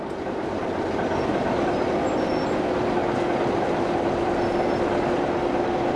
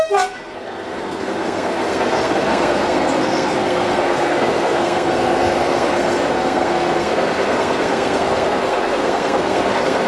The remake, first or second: second